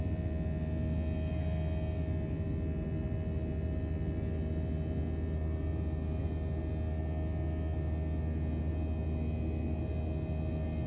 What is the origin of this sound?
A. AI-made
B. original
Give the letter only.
B